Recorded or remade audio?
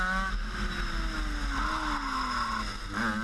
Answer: recorded